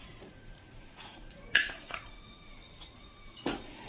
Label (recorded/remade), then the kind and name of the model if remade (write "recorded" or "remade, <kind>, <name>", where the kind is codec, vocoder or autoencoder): remade, vocoder, Vocos